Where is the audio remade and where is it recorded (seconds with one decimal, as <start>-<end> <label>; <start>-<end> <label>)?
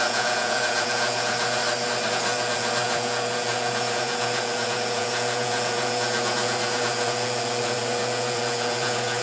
0.0-1.6 remade; 1.6-2.1 recorded; 2.1-9.2 remade